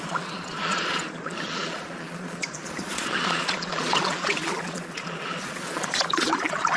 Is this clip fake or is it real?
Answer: fake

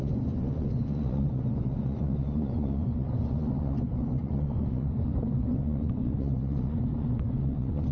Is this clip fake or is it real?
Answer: fake